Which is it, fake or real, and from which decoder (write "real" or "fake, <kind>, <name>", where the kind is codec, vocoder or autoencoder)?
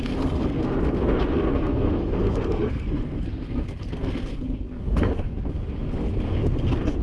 fake, codec, SNAC